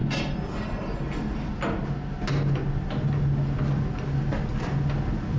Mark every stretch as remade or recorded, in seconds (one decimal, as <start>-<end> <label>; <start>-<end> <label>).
0.0-5.4 recorded